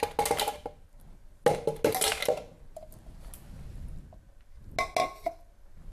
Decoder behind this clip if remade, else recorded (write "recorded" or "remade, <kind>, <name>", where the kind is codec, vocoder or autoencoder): recorded